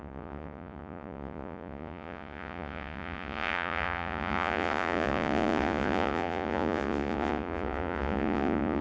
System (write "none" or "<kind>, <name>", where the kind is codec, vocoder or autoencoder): vocoder, Vocos